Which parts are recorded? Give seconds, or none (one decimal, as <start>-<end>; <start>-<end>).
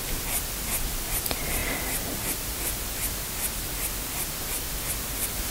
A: 0.0-5.5